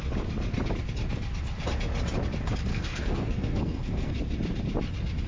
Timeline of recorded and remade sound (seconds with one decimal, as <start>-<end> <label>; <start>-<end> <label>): 0.0-2.7 recorded; 2.7-4.1 remade; 4.1-5.3 recorded